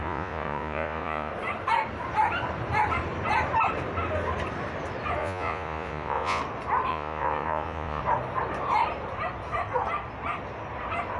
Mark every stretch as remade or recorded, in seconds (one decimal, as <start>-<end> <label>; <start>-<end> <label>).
0.0-1.3 remade; 1.3-5.2 recorded; 5.2-6.4 remade; 6.4-6.9 recorded; 6.9-8.0 remade; 8.0-11.2 recorded

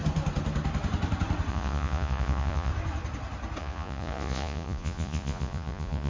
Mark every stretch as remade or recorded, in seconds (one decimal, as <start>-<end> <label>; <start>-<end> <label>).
0.0-1.5 recorded; 1.5-2.7 remade; 2.7-3.6 recorded; 3.6-6.1 remade

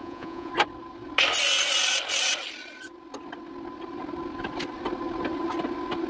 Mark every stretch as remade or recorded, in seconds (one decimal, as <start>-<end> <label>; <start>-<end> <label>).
0.0-0.5 remade; 0.5-6.1 recorded

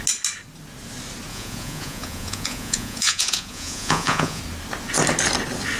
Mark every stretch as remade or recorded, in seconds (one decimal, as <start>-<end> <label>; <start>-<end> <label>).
0.0-1.3 recorded; 1.3-4.4 remade; 4.4-5.8 recorded

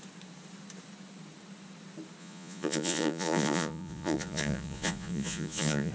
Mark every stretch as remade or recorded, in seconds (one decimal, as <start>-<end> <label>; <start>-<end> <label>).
0.0-2.2 recorded; 2.2-5.9 remade